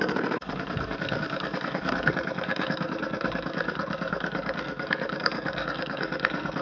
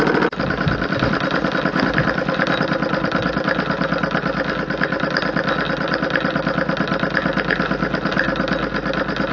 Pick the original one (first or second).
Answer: second